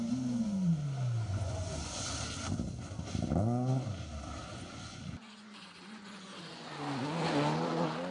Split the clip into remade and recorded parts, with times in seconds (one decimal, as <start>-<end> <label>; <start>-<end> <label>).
0.0-1.3 recorded; 1.3-2.2 remade; 2.2-4.5 recorded; 4.5-6.7 remade; 6.7-8.1 recorded